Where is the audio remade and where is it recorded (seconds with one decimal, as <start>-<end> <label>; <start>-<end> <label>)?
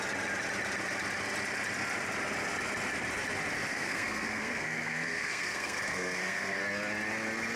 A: 0.0-3.7 recorded; 3.7-6.6 remade; 6.6-7.6 recorded